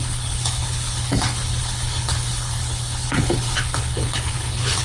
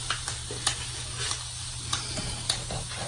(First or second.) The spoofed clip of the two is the first